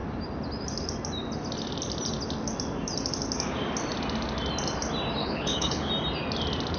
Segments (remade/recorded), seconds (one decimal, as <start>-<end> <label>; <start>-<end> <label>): 0.0-5.2 recorded; 5.2-5.9 remade; 5.9-6.8 recorded